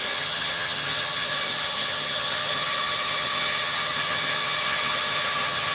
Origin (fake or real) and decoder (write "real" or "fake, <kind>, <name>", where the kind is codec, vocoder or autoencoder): fake, vocoder, HiFi-GAN